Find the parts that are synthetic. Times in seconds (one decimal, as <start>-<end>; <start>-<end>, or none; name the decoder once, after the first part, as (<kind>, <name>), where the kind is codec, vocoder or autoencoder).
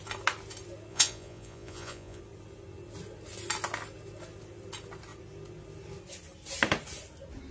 0.9-2.2 (vocoder, Vocos)